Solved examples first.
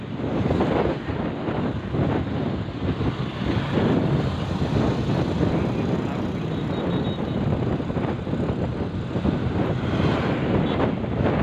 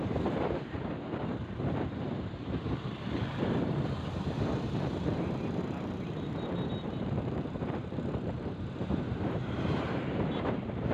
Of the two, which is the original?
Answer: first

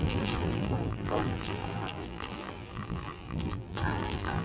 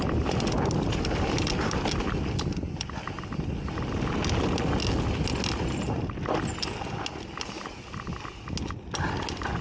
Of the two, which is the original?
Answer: second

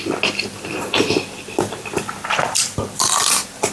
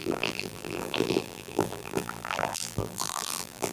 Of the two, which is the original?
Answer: first